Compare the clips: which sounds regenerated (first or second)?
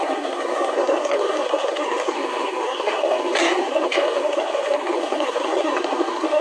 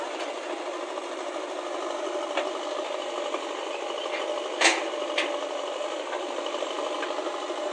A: first